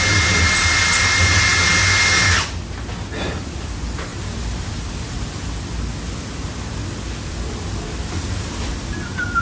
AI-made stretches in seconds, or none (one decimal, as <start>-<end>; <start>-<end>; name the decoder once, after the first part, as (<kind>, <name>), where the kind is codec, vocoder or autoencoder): none